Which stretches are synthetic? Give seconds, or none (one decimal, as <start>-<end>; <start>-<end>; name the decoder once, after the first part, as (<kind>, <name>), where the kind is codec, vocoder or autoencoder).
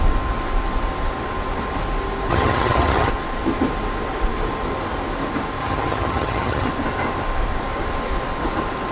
2.3-3.1 (vocoder, HiFi-GAN); 5.6-6.7